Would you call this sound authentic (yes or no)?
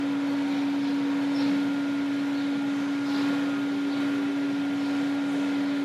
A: yes